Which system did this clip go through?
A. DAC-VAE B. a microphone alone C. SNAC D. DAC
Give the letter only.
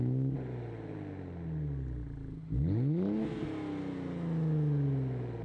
B